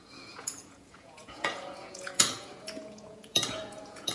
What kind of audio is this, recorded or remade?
remade